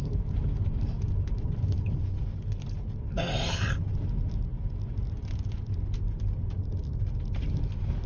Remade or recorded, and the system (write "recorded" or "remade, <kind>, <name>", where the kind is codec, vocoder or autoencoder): recorded